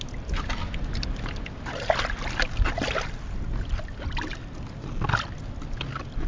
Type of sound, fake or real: real